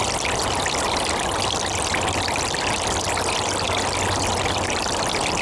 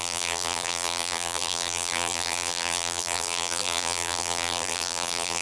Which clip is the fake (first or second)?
second